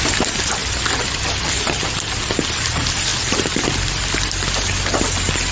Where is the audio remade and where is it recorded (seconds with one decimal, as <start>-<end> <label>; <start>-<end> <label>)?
0.0-0.6 recorded; 0.6-1.5 remade; 1.5-3.1 recorded; 3.1-5.5 remade